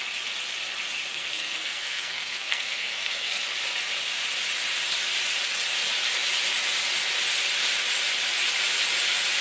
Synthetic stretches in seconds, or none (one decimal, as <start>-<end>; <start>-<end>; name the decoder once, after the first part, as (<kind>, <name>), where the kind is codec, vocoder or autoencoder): 1.1-3.4 (codec, SNAC)